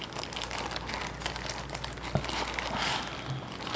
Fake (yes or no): no